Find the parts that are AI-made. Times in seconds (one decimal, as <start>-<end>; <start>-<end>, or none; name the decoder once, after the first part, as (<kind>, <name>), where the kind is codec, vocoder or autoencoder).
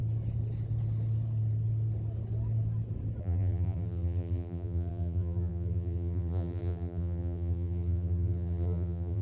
3.2-9.2 (vocoder, BigVGAN v2)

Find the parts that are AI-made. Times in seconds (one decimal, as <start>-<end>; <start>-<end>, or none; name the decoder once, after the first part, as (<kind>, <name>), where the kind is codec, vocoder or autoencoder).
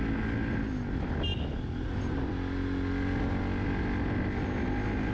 none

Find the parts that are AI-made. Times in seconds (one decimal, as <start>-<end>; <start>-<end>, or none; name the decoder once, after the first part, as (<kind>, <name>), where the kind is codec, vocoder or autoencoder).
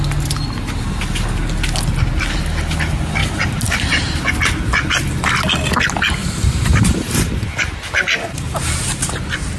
3.2-4.3 (vocoder, BigVGAN v2); 6.2-8.7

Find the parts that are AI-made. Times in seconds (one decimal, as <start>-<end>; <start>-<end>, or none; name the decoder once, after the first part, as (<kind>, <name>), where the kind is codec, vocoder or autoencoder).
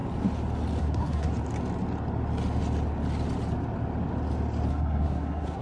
0.8-1.3 (codec, SNAC); 4.7-5.6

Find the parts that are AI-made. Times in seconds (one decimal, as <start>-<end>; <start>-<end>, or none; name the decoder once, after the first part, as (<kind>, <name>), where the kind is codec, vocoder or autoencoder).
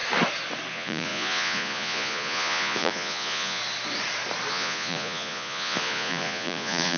0.7-3.6 (vocoder, Vocos); 4.5-7.0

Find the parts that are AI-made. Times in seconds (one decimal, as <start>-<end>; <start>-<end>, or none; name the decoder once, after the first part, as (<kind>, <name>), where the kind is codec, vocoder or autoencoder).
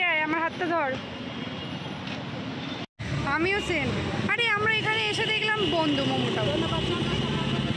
none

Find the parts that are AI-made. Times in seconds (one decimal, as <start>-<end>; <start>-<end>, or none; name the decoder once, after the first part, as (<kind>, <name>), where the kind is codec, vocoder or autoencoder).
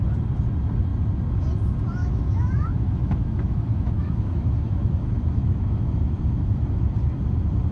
2.0-6.6 (autoencoder, DAC-VAE)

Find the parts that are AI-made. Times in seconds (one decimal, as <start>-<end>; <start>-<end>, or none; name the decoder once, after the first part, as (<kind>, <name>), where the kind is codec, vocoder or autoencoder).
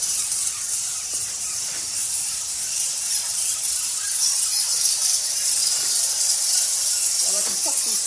0.0-5.6 (vocoder, BigVGAN v2); 6.9-8.1